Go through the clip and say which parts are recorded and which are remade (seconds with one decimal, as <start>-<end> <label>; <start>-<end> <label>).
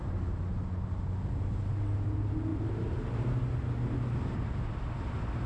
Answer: 0.0-2.5 recorded; 2.5-3.1 remade; 3.1-5.5 recorded